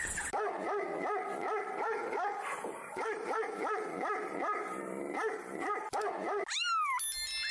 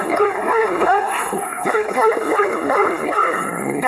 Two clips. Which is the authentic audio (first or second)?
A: first